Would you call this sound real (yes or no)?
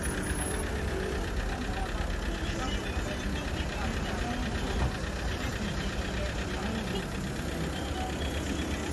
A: yes